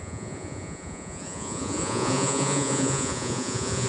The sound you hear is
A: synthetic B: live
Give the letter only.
A